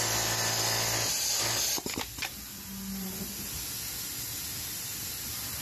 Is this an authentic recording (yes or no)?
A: yes